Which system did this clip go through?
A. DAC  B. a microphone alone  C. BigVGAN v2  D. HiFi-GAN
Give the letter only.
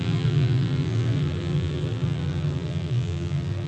C